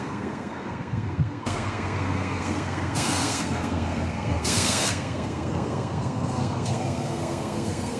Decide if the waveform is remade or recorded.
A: remade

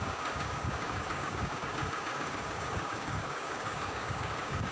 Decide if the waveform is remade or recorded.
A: remade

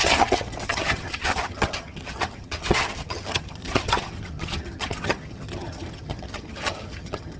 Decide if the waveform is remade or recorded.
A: remade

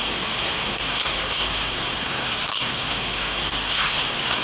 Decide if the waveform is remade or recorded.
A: remade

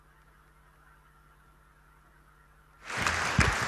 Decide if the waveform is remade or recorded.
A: recorded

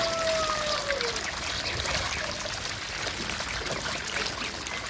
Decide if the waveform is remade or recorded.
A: recorded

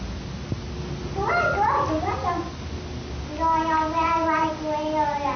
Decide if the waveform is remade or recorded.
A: recorded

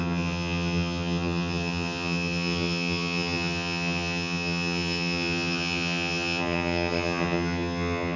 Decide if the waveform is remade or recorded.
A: remade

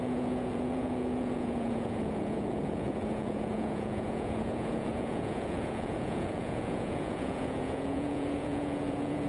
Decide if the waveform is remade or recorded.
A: remade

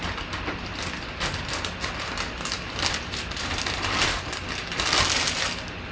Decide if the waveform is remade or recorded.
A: recorded